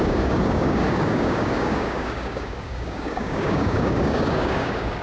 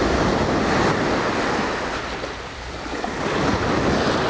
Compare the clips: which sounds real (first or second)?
second